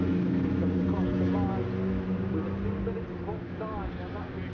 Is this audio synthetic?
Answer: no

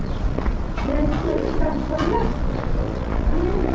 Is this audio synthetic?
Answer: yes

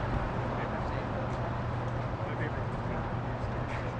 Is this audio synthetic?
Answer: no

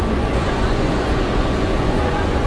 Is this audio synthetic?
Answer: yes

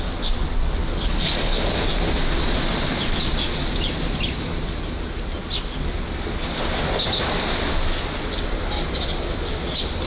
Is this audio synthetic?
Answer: no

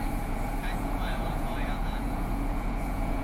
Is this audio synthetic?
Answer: yes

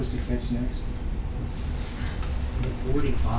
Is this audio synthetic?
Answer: no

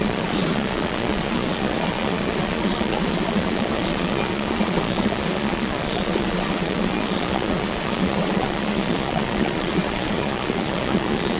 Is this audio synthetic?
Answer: yes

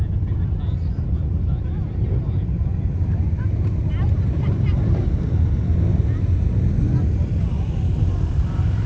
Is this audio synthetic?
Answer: no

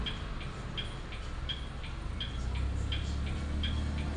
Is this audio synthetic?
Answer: no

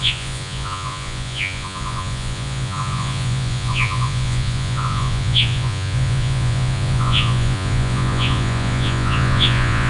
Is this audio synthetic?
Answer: yes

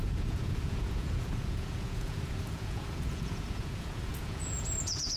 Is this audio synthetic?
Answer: yes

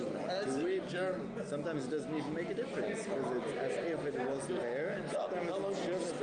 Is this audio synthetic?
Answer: no